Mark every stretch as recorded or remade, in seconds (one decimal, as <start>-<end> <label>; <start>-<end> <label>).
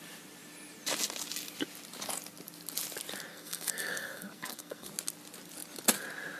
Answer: 0.0-3.3 recorded; 3.3-4.9 remade; 4.9-6.4 recorded